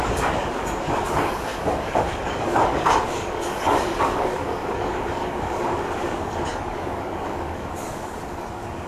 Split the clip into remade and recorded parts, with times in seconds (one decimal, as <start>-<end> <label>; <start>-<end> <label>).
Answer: 0.0-8.9 remade